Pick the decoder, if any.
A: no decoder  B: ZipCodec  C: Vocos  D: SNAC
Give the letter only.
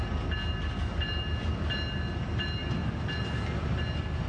A